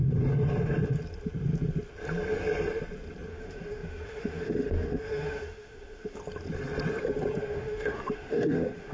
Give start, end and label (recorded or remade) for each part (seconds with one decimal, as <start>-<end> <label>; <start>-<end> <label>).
0.0-3.3 recorded; 3.3-6.2 remade; 6.2-7.4 recorded; 7.4-8.9 remade